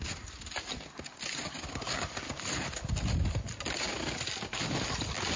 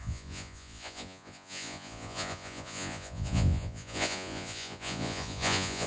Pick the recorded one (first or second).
first